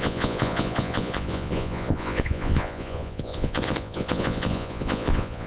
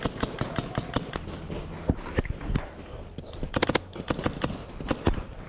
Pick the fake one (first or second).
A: first